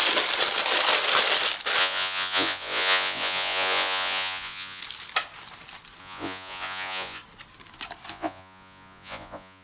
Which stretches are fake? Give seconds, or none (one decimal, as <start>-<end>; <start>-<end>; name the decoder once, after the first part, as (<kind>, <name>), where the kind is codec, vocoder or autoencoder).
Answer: 1.8-4.8 (vocoder, Vocos); 6.0-7.2; 8.1-9.6